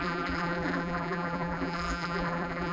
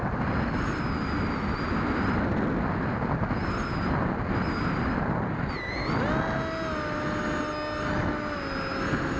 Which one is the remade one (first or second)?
first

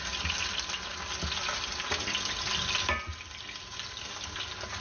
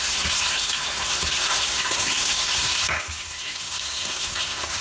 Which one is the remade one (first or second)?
second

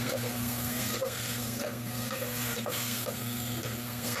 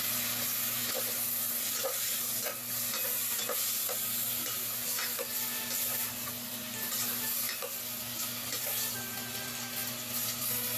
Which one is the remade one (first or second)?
first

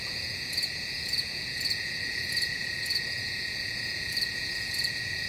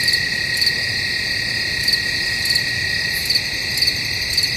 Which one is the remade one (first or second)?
first